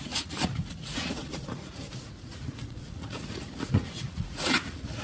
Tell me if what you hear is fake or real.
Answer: fake